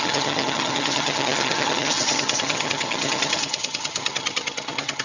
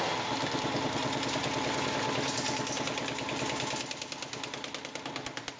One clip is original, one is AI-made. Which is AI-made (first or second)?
first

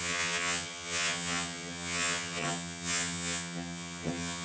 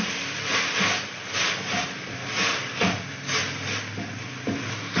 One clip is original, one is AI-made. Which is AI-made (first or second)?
first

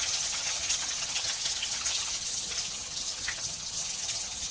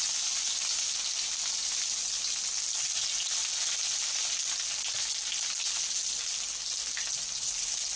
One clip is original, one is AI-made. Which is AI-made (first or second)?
first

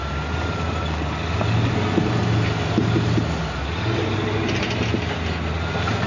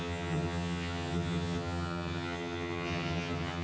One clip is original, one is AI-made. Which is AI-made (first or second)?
second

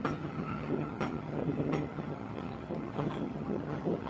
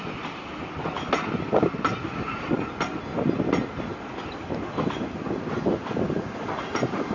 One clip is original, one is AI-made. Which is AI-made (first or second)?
first